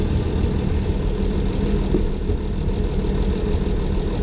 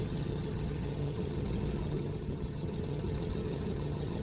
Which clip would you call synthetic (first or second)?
second